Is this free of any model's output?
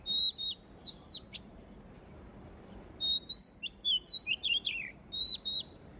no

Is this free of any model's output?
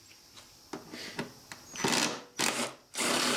yes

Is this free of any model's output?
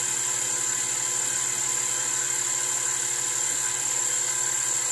yes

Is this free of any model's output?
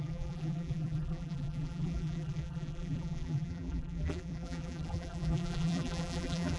no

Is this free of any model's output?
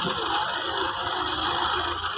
yes